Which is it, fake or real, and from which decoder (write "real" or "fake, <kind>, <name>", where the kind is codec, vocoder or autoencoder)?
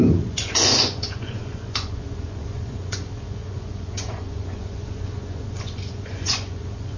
fake, vocoder, Vocos